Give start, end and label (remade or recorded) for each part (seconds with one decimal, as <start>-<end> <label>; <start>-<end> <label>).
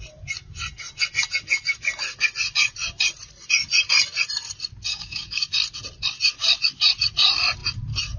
0.0-4.9 recorded; 4.9-5.5 remade; 5.5-8.2 recorded